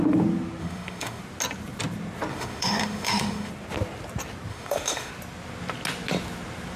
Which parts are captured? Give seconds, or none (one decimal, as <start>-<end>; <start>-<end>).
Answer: 0.0-0.6; 1.2-2.3; 3.5-4.5; 5.1-6.8